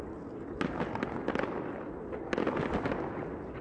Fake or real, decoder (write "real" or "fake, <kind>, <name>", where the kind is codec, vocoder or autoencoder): real